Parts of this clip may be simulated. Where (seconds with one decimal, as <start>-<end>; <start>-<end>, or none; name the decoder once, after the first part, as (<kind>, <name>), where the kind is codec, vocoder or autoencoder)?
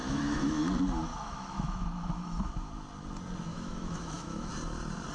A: 0.0-0.7 (autoencoder, DAC-VAE); 1.1-2.5; 3.5-4.5